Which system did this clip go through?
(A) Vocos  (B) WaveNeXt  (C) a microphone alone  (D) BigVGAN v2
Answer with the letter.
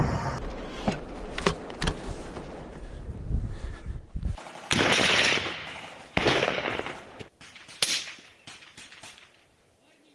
D